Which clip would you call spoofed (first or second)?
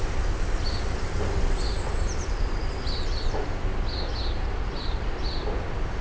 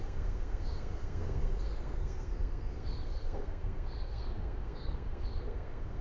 second